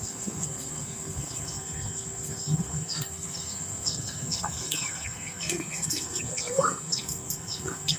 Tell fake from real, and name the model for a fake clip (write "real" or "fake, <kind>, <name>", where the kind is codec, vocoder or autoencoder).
fake, codec, SNAC